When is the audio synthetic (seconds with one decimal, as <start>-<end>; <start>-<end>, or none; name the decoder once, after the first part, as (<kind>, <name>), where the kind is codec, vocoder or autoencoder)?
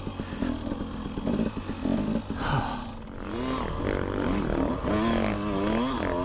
none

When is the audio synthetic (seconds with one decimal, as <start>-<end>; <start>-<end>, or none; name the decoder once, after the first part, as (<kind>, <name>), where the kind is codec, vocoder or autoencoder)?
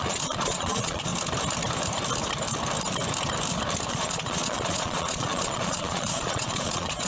0.0-1.1 (vocoder, Vocos); 3.9-7.1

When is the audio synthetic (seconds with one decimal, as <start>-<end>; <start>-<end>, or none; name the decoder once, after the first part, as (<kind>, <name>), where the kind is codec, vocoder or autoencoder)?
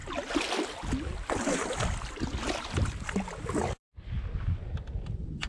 none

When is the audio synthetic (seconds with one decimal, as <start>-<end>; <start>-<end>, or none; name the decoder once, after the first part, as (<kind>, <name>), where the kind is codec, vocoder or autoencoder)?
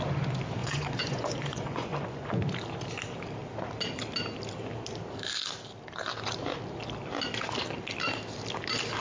0.6-2.4 (vocoder, Vocos)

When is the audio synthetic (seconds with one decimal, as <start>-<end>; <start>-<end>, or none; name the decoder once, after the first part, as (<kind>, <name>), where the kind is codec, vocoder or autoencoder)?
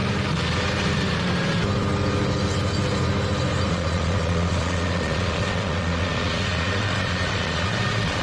3.7-8.2 (vocoder, Vocos)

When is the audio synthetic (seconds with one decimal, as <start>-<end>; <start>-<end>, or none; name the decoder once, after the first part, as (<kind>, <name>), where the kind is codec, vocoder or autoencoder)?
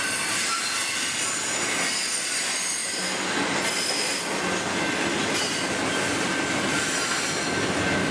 none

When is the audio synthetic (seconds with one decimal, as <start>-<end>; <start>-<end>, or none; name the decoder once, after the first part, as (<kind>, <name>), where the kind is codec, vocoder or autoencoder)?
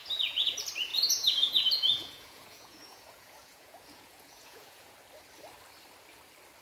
0.0-0.5 (vocoder, Vocos); 0.9-4.9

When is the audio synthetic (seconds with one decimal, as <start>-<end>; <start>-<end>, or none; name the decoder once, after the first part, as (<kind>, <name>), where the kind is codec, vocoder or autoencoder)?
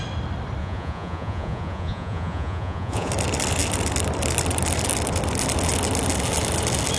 0.6-3.1 (vocoder, Vocos)